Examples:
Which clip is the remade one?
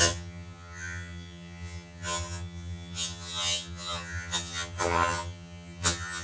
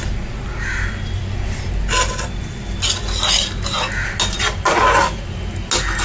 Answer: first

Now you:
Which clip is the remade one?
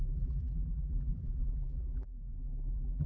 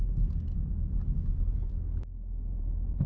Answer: first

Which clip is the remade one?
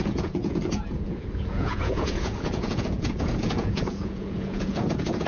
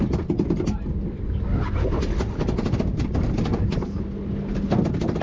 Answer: first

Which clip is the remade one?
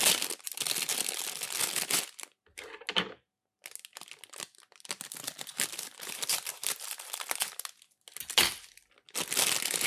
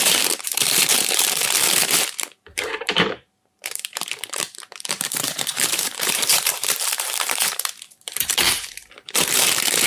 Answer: second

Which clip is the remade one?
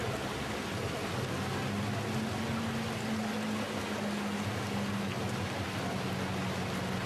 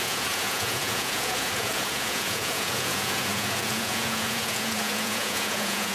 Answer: second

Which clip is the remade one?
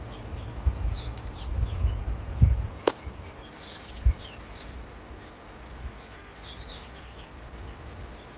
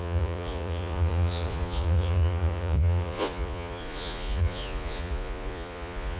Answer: second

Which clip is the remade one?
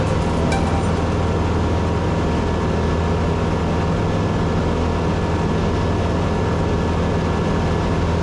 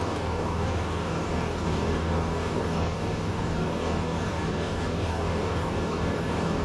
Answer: second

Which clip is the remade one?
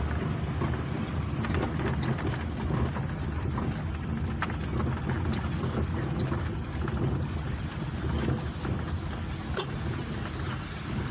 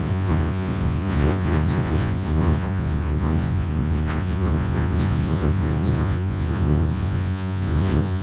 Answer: second